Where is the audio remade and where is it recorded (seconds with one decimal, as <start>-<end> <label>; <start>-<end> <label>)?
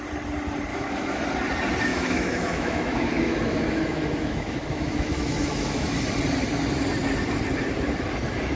0.0-0.7 recorded; 0.7-1.2 remade; 1.2-1.9 recorded; 1.9-5.9 remade; 5.9-8.6 recorded